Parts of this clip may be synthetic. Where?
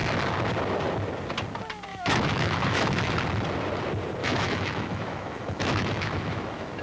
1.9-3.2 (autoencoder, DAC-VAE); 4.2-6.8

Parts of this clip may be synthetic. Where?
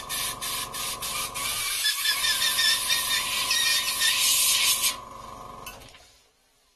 1.1-2.2 (autoencoder, DAC-VAE)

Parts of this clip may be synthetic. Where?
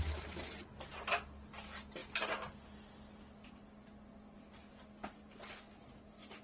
none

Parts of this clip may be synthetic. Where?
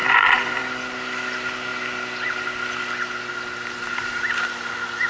0.0-0.6 (vocoder, BigVGAN v2); 3.9-4.4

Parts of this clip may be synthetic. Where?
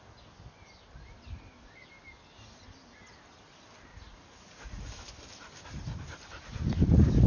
3.9-4.9 (vocoder, Vocos)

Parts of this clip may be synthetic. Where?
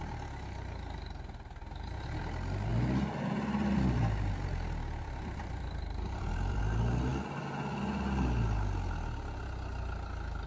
2.7-6.6 (vocoder, BigVGAN v2)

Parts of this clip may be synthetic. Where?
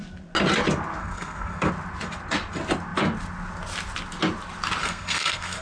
1.0-1.7 (codec, SNAC); 4.8-5.6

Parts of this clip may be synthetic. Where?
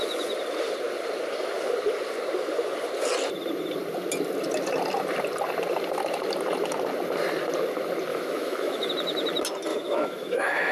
8.1-8.9 (autoencoder, DAC-VAE); 9.7-10.7